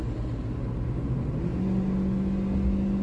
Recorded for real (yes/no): yes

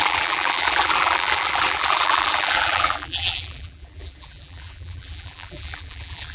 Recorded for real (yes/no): no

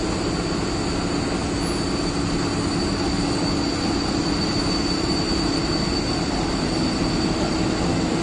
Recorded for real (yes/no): yes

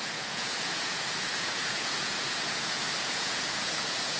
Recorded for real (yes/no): no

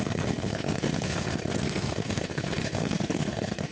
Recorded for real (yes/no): no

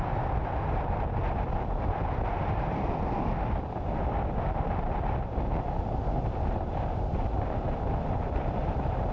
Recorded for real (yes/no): yes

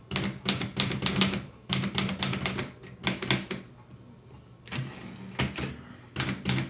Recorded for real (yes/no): yes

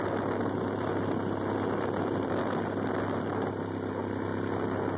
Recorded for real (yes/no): yes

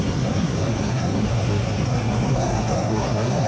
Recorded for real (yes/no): no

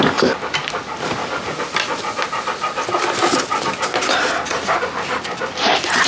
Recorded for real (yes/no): yes